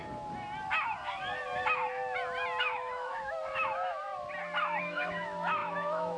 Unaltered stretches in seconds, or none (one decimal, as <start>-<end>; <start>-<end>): 0.0-2.6; 4.1-4.8